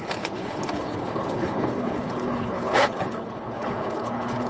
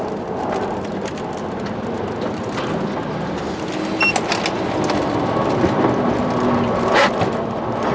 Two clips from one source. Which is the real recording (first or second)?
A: second